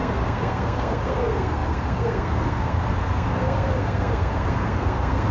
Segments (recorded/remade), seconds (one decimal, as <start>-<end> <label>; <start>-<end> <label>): 0.0-5.3 remade